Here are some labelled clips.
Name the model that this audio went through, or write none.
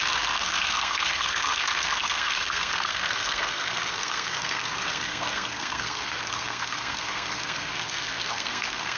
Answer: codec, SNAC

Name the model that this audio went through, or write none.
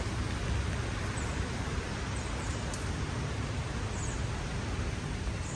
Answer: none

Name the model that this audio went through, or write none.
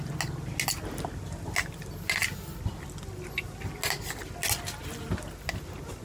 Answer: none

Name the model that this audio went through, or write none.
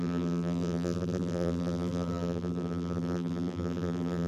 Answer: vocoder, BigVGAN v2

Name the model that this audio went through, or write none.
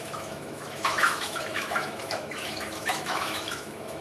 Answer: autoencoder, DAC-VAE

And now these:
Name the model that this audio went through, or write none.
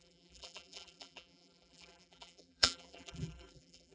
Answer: vocoder, BigVGAN v2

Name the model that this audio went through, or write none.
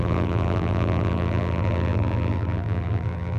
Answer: vocoder, BigVGAN v2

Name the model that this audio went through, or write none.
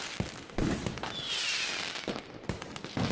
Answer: none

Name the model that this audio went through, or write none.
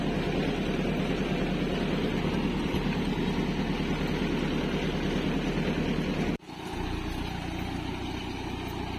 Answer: none